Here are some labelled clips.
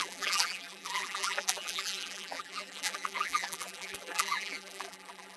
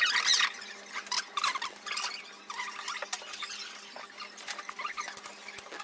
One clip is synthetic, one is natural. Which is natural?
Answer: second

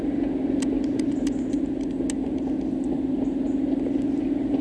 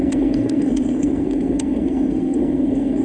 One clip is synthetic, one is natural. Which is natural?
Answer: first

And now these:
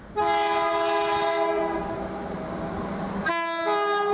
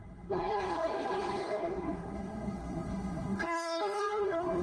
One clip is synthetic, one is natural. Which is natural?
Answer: first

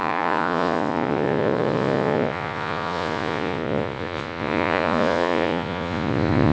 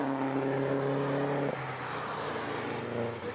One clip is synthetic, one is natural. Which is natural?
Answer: second